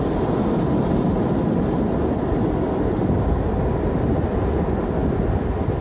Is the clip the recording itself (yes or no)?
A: yes